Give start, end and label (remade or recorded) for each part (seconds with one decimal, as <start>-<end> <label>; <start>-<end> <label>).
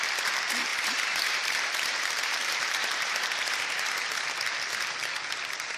0.0-0.7 recorded; 0.7-4.2 remade; 4.2-5.8 recorded